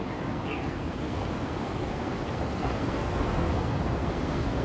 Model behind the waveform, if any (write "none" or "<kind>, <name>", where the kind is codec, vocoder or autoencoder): codec, SNAC